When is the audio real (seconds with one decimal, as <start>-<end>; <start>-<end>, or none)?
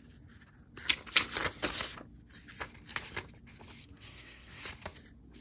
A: 0.0-3.8; 4.6-5.4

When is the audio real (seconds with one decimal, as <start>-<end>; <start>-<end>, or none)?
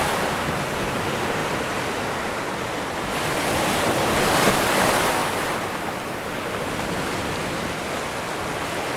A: 0.0-9.0